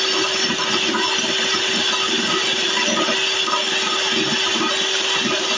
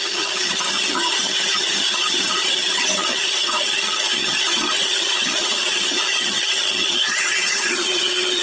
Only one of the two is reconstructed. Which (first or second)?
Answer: second